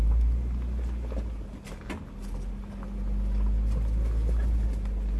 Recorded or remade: recorded